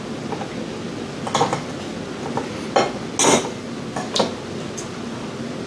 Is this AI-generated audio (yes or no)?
no